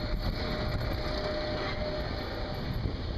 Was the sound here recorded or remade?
recorded